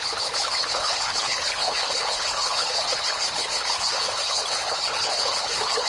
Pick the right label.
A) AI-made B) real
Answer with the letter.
A